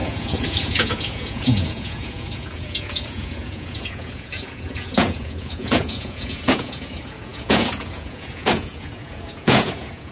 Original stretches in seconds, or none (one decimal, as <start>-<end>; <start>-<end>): none